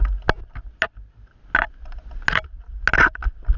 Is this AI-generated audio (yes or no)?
no